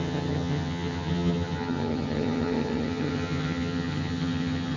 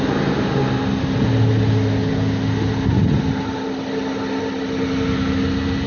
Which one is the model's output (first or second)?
first